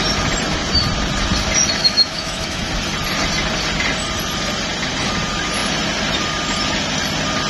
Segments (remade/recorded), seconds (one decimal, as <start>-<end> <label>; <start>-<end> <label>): 0.0-1.8 recorded; 1.8-2.6 remade; 2.6-7.5 recorded